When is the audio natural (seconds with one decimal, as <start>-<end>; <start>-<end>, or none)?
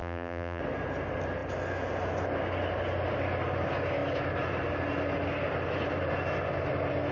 0.6-7.1